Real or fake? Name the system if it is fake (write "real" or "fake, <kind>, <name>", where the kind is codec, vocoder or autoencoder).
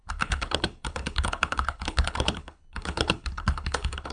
fake, codec, HILCodec